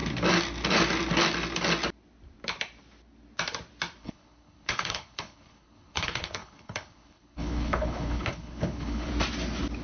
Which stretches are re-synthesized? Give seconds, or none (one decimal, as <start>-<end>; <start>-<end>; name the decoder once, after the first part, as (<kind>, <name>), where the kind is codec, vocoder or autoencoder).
4.0-9.1 (codec, HILCodec)